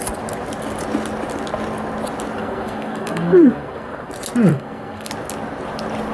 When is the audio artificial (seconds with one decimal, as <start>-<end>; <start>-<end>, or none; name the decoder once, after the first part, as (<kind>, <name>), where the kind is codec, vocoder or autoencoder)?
2.4-4.1 (codec, SNAC); 4.5-5.1